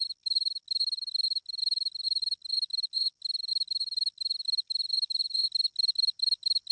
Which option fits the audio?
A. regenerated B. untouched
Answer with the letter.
B